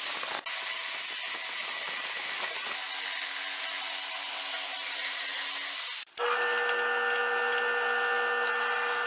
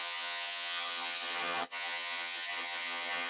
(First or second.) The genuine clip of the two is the first